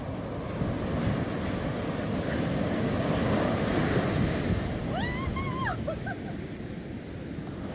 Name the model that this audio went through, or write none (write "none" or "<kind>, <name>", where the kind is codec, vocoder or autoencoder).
none